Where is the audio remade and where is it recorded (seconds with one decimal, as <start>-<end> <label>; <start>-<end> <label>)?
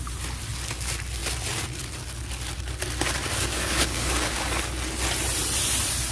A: 0.0-3.5 recorded; 3.5-4.7 remade; 4.7-6.1 recorded